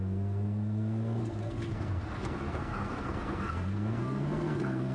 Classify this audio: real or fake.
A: fake